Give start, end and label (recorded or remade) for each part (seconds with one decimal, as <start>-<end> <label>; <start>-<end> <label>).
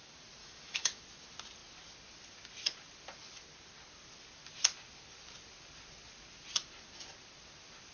0.0-0.4 recorded; 0.4-1.0 remade; 1.0-7.9 recorded